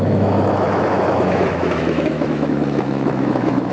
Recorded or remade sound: remade